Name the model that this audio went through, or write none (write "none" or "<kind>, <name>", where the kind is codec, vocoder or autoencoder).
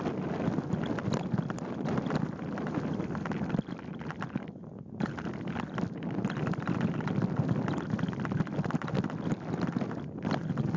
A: none